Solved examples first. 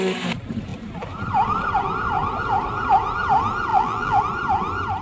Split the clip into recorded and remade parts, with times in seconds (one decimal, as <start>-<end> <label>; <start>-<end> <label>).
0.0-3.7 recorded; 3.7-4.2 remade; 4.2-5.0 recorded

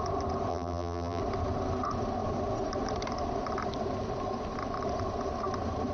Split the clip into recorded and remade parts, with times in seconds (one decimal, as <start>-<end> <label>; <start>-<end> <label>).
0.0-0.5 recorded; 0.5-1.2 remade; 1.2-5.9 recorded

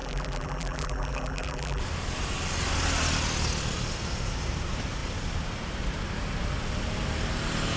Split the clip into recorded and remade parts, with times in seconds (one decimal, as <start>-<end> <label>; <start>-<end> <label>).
0.0-1.8 remade; 1.8-7.8 recorded

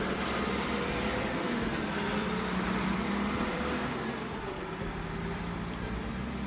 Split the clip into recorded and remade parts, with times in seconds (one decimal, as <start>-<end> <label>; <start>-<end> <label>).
0.0-2.2 recorded; 2.2-6.1 remade; 6.1-6.5 recorded

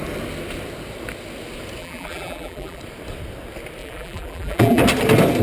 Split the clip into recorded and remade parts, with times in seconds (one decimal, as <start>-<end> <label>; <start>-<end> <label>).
0.0-1.8 recorded; 1.8-2.8 remade; 2.8-3.8 recorded; 3.8-4.8 remade; 4.8-5.4 recorded

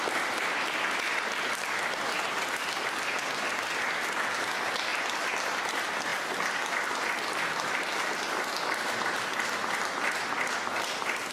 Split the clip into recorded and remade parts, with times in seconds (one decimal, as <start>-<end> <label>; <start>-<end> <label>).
0.0-11.3 recorded